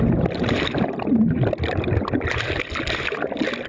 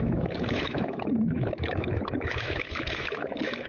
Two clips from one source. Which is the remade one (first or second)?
second